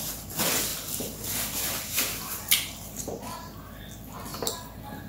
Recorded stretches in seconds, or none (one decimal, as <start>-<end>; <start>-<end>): 0.0-5.1